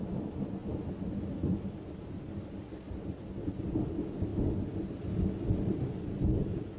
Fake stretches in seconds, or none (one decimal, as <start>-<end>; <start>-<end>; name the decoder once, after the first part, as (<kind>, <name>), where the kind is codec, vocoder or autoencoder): 0.6-2.6 (vocoder, BigVGAN v2)